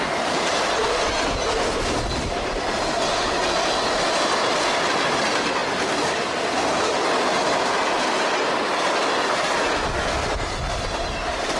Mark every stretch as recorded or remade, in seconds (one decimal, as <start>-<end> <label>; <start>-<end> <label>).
0.0-11.6 recorded